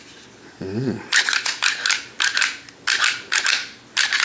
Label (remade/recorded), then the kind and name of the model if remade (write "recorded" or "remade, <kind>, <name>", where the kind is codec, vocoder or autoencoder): recorded